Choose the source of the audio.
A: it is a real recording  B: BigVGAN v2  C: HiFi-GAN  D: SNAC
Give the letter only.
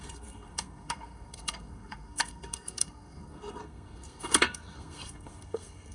D